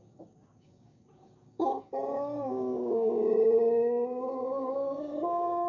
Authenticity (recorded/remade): remade